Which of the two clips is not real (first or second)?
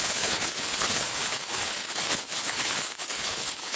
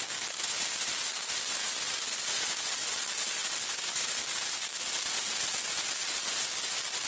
first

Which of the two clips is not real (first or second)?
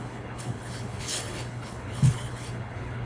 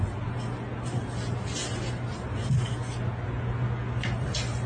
first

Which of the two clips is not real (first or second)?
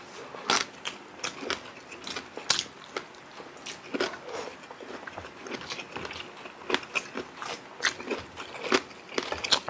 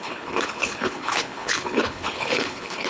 second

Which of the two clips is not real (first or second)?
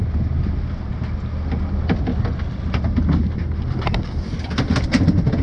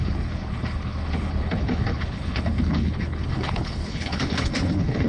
second